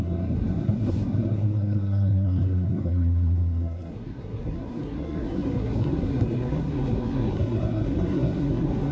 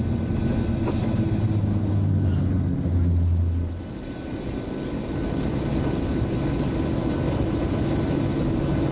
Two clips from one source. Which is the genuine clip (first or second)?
second